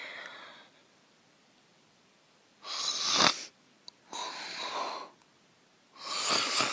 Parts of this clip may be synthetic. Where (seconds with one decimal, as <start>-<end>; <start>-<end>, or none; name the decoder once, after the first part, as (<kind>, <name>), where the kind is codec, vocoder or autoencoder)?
0.0-4.0 (vocoder, BigVGAN v2)